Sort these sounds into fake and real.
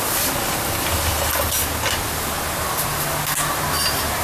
real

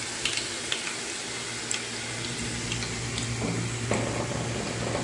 real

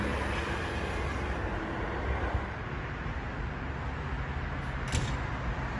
real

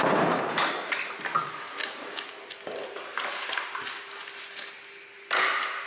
real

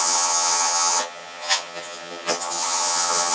fake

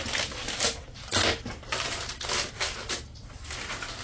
real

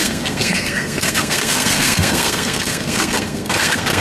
fake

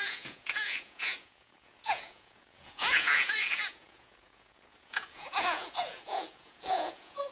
fake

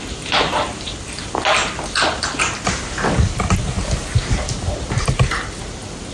real